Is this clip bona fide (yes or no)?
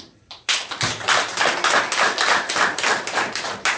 yes